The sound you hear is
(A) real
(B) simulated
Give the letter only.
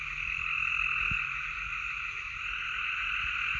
A